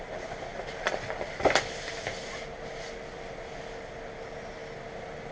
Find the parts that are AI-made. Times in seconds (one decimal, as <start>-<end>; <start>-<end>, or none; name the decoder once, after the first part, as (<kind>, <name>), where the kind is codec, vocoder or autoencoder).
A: none